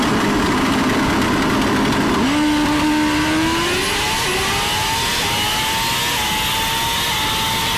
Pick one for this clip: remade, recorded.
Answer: recorded